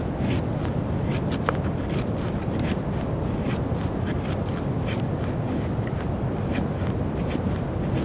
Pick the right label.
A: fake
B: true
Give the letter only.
B